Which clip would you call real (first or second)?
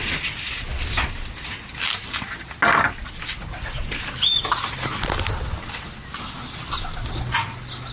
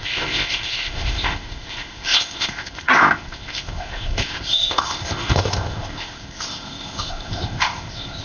first